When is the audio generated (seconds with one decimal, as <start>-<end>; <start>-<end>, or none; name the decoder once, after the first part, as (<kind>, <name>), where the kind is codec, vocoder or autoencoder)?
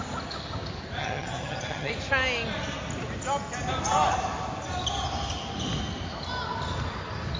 1.0-1.9 (vocoder, HiFi-GAN)